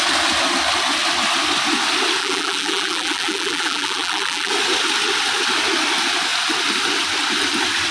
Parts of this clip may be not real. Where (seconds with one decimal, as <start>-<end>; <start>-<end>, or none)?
2.2-4.5